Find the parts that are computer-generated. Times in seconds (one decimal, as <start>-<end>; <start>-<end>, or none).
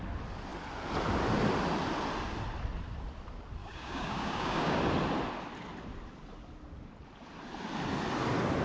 3.6-4.8